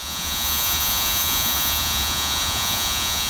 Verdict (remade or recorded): remade